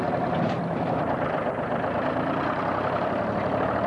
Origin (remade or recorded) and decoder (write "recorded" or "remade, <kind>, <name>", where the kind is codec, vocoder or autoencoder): remade, vocoder, BigVGAN v2